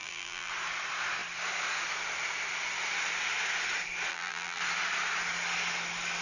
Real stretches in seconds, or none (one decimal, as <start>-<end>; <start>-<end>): 0.5-4.1; 4.6-6.2